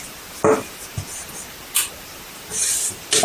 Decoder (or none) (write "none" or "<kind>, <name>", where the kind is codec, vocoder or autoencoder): none